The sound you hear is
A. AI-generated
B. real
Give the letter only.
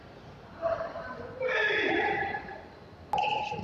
B